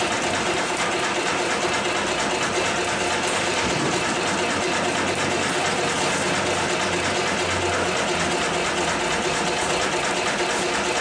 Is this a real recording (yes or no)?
yes